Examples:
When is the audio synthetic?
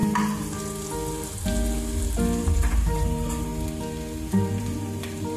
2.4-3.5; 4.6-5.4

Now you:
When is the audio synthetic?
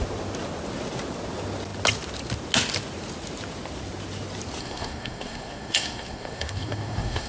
4.6-7.3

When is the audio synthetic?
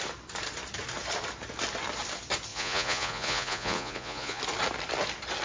2.5-4.4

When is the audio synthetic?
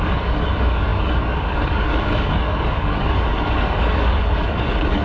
0.0-5.0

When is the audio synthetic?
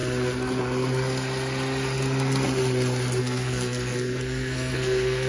3.2-5.3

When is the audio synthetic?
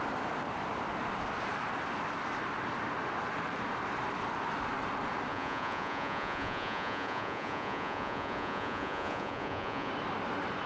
5.3-9.9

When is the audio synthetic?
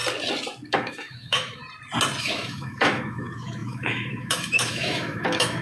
0.7-1.6; 2.2-5.6